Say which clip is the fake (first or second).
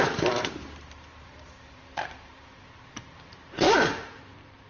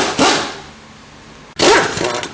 first